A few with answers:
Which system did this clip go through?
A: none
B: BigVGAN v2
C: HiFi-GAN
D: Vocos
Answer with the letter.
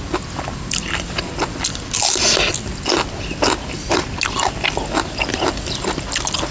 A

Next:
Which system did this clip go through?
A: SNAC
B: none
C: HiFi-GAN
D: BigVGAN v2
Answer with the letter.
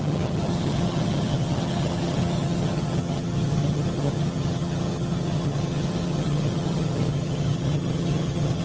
C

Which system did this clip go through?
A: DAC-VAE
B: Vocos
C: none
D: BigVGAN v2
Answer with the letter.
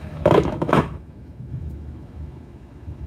A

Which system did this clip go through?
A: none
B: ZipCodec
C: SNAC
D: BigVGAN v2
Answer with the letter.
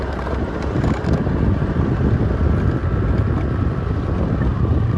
A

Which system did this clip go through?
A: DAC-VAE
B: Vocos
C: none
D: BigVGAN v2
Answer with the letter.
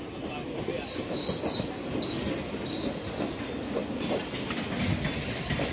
C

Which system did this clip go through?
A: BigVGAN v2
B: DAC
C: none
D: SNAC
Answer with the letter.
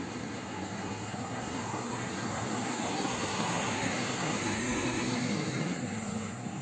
D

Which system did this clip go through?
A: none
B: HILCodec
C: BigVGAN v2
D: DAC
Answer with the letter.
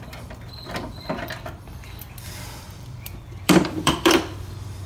C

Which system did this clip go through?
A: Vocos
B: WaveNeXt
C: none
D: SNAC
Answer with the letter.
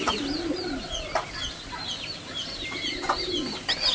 C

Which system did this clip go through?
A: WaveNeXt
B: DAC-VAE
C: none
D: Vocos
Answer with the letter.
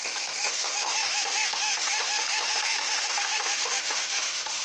B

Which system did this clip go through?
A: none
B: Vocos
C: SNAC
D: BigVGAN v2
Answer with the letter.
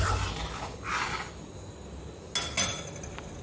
A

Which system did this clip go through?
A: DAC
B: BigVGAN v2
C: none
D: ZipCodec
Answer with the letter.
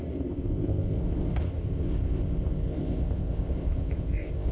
D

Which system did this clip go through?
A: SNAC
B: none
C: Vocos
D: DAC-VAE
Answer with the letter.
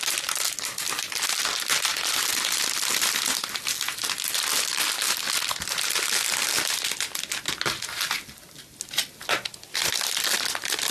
B